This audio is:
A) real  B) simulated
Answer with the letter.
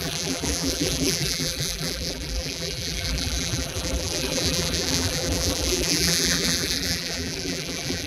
B